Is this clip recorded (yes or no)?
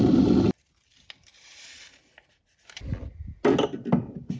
yes